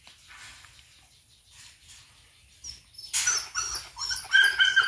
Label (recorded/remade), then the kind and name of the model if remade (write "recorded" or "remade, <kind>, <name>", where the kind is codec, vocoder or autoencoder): recorded